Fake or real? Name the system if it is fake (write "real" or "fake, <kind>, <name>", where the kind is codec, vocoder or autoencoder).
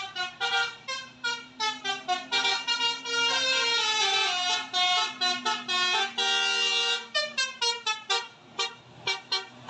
real